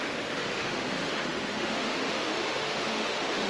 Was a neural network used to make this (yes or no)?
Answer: yes